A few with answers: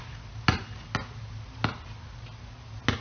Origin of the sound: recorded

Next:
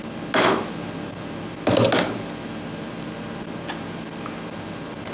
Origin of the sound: recorded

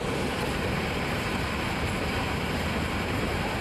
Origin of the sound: recorded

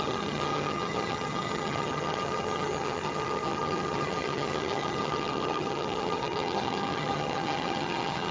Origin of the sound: remade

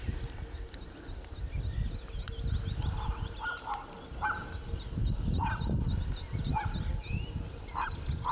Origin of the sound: recorded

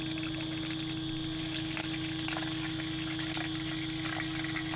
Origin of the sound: recorded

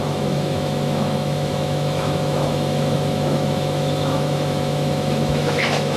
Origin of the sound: remade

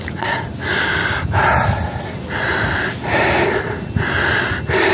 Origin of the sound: recorded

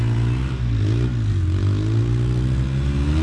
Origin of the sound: recorded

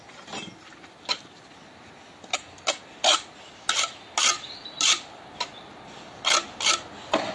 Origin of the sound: recorded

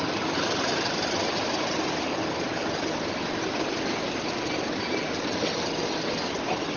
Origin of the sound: recorded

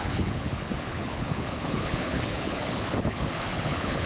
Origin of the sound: remade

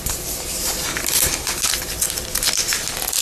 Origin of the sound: recorded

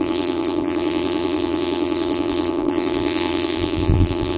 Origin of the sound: remade